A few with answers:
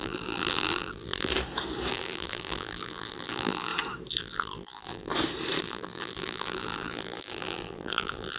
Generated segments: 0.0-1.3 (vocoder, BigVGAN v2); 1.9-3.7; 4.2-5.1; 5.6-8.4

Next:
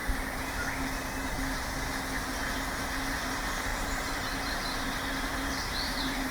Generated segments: 3.1-6.3 (vocoder, BigVGAN v2)

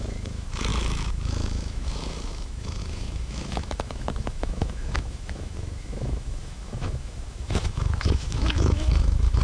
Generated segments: 0.0-9.4 (autoencoder, DAC-VAE)